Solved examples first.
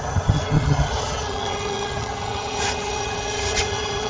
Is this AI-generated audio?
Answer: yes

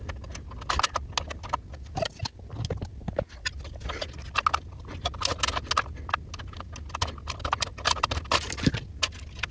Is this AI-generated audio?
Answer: no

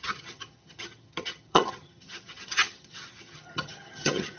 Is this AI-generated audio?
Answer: yes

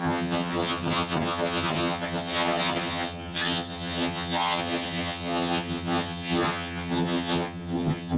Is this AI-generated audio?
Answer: yes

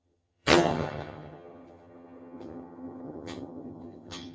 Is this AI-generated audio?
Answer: yes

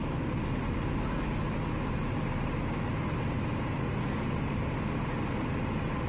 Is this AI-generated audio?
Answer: no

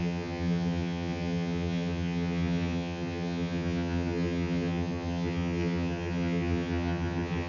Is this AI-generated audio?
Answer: yes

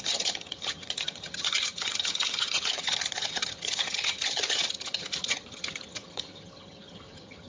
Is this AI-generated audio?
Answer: yes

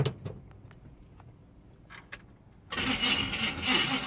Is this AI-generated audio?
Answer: no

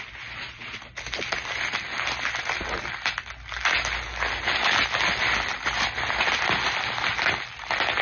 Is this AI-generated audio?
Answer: no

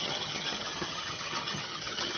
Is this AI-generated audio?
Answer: yes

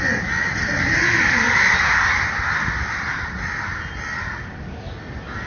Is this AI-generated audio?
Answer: no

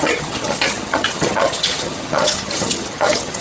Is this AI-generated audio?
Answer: yes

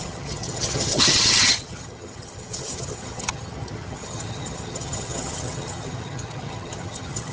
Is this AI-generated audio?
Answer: yes